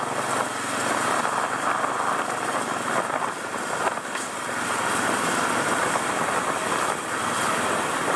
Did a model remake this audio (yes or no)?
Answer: no